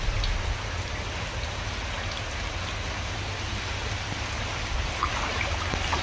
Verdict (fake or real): real